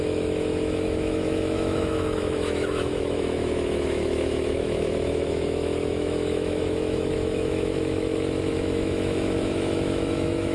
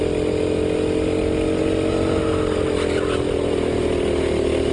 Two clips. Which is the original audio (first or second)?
second